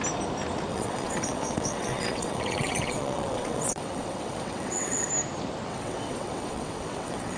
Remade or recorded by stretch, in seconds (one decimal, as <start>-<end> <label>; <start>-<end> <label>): 0.0-0.7 recorded; 0.7-5.1 remade; 5.1-5.7 recorded; 5.7-7.4 remade